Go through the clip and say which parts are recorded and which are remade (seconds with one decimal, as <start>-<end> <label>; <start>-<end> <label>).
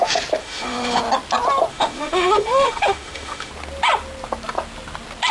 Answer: 0.0-0.4 recorded; 0.4-1.0 remade; 1.0-1.7 recorded; 1.7-3.5 remade; 3.5-5.3 recorded